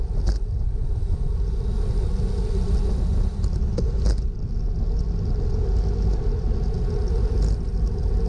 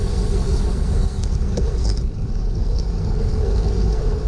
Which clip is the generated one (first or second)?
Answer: second